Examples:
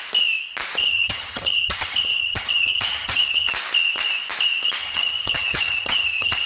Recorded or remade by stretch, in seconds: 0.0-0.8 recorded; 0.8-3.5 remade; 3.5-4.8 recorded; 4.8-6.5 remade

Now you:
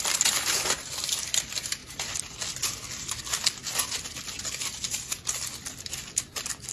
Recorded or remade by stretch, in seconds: 0.0-6.7 recorded

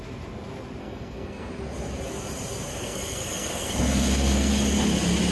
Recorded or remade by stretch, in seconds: 0.0-0.8 recorded; 0.8-1.5 remade; 1.5-2.7 recorded; 2.7-4.5 remade; 4.5-5.3 recorded

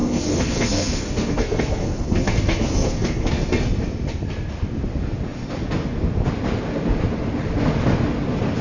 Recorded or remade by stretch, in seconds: 0.0-3.3 remade; 3.3-8.6 recorded

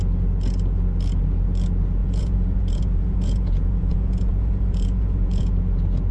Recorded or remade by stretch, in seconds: 0.0-2.0 recorded; 2.0-5.5 remade; 5.5-6.1 recorded

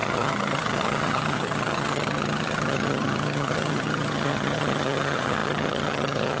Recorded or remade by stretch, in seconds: 0.0-6.4 remade

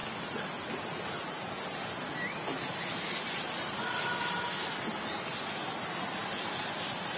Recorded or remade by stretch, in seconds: 0.0-7.2 recorded

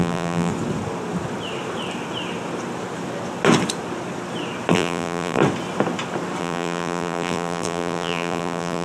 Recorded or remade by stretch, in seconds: 0.0-0.5 remade; 0.5-4.7 recorded; 4.7-5.4 remade; 5.4-6.4 recorded; 6.4-8.8 remade